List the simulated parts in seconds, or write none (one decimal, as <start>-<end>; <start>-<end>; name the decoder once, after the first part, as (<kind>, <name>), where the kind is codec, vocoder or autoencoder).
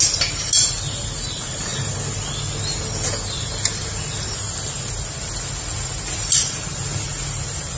none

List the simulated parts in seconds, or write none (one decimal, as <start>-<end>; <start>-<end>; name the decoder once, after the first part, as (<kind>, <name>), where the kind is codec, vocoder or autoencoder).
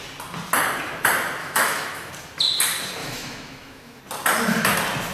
1.4-2.1 (autoencoder, DAC-VAE); 3.0-4.0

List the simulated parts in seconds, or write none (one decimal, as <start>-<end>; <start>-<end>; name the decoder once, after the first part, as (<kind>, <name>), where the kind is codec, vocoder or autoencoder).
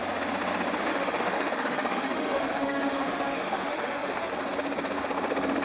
0.9-4.3 (autoencoder, DAC-VAE)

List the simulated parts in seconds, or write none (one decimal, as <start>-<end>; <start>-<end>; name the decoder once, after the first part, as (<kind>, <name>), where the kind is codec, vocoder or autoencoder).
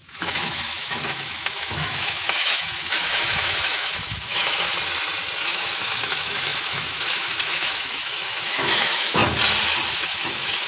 0.0-4.7 (autoencoder, DAC-VAE); 5.4-9.2; 9.9-10.7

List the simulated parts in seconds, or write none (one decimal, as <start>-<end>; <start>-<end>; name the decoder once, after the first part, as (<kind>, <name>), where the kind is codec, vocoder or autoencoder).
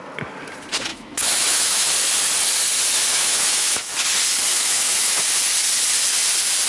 0.9-1.9 (autoencoder, DAC-VAE); 3.1-3.9; 4.5-5.2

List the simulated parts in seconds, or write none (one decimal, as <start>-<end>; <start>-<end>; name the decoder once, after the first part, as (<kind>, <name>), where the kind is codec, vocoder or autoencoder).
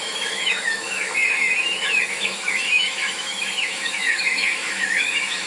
0.0-5.5 (autoencoder, DAC-VAE)